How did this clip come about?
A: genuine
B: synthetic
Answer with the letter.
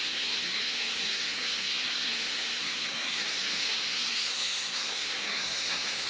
B